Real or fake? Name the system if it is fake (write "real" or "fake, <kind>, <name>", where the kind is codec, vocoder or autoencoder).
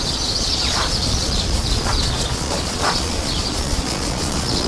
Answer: fake, vocoder, Vocos